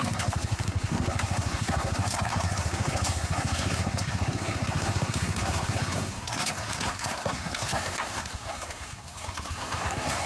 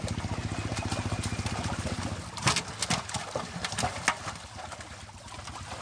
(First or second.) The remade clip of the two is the first